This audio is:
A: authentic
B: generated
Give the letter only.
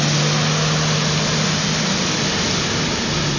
A